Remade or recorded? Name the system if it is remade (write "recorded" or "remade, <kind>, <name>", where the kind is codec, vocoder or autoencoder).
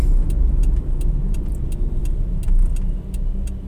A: recorded